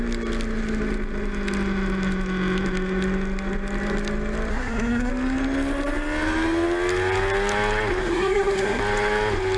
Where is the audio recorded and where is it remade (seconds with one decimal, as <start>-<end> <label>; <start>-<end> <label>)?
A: 0.0-4.5 recorded; 4.5-5.1 remade; 5.1-8.0 recorded; 8.0-8.8 remade; 8.8-9.6 recorded